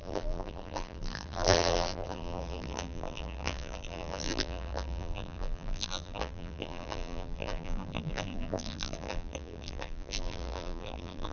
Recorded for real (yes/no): no